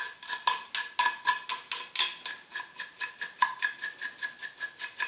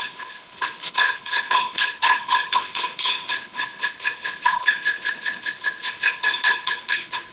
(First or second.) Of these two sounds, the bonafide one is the first